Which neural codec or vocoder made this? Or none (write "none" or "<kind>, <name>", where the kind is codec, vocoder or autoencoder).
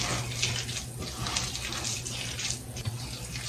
none